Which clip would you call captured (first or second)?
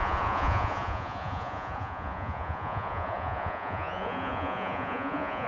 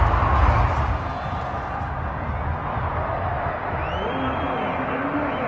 second